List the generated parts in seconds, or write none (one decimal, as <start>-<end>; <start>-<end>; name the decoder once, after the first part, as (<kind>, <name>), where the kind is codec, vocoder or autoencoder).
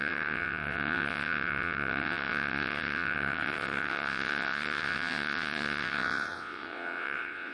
0.0-7.5 (vocoder, WaveNeXt)